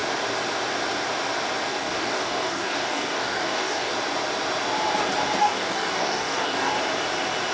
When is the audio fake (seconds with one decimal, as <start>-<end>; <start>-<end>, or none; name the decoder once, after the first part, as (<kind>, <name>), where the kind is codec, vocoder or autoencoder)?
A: 1.7-3.9 (codec, DAC); 5.4-6.7